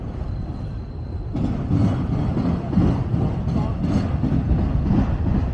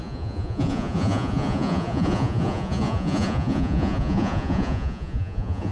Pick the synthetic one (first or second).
second